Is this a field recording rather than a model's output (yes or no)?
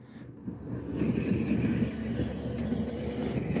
yes